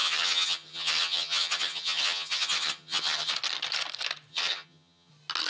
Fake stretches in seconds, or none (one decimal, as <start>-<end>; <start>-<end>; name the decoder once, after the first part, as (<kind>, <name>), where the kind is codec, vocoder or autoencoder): 0.0-3.3 (vocoder, HiFi-GAN); 4.3-5.1